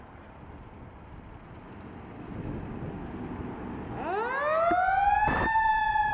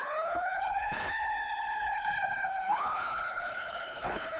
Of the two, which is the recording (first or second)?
first